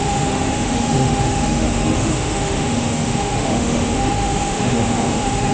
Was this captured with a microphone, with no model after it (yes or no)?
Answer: no